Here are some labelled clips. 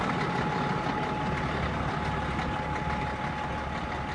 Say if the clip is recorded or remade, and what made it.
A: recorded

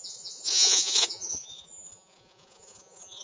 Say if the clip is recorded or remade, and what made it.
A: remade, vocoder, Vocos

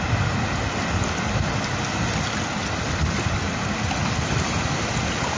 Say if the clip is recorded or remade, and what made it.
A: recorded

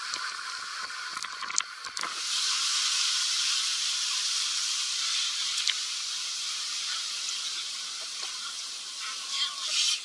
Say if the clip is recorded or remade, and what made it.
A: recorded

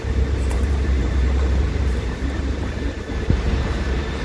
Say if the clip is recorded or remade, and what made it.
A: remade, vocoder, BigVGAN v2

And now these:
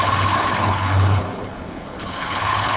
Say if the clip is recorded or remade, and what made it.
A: remade, codec, HILCodec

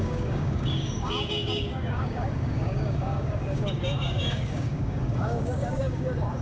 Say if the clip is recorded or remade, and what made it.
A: remade, codec, DAC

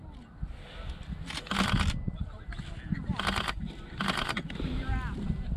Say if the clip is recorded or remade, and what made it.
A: recorded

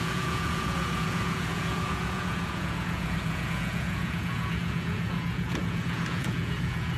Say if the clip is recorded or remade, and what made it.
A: remade, vocoder, Vocos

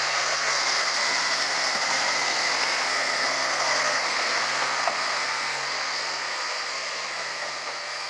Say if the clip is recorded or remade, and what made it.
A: remade, codec, SNAC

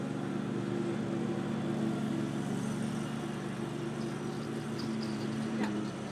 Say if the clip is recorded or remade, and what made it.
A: recorded